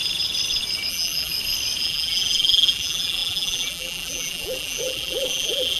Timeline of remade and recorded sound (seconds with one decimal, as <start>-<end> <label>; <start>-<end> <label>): 0.0-0.9 recorded; 0.9-1.3 remade; 1.3-1.8 recorded; 1.8-5.8 remade